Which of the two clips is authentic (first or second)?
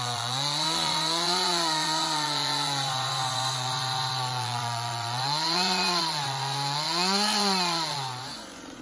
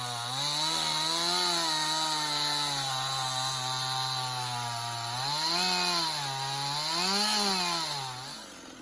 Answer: second